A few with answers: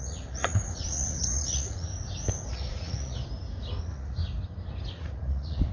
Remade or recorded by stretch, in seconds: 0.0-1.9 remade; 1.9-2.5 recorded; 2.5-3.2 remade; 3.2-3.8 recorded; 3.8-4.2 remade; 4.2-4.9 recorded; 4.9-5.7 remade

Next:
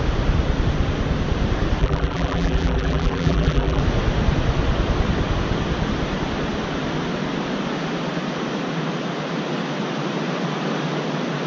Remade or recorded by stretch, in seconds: 0.0-1.8 recorded; 1.8-3.8 remade; 3.8-11.5 recorded

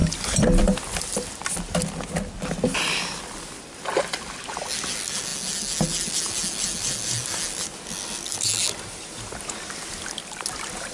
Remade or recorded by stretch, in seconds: 0.0-10.9 recorded

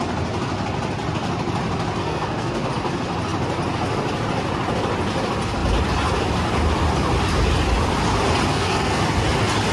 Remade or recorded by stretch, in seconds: 0.0-2.0 recorded; 2.0-2.7 remade; 2.7-8.5 recorded; 8.5-9.0 remade; 9.0-9.7 recorded

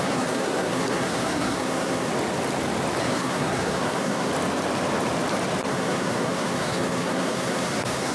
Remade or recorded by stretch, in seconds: 0.0-2.1 remade; 2.1-3.0 recorded; 3.0-4.3 remade; 4.3-5.7 recorded; 5.7-8.1 remade

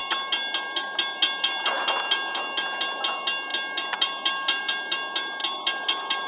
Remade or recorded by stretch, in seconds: 0.0-6.3 recorded